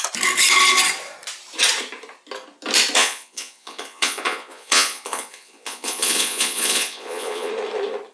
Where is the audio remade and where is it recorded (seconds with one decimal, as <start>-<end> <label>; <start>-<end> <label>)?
0.0-3.0 recorded; 3.0-7.5 remade; 7.5-8.1 recorded